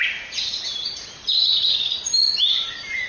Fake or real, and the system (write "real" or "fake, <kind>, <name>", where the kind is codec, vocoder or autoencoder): fake, vocoder, BigVGAN v2